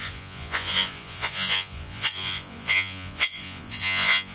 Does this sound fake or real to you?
fake